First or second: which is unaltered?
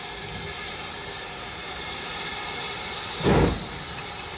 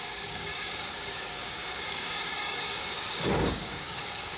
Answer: first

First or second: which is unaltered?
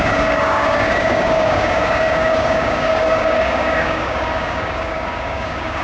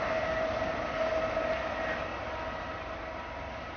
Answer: second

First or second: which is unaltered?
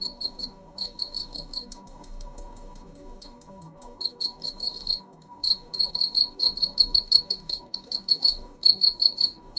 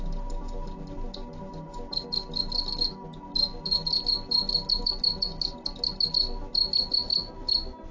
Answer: second